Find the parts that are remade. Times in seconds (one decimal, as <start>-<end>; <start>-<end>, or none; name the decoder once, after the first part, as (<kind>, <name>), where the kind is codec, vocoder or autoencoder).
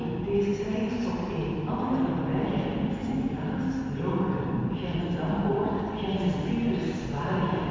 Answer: none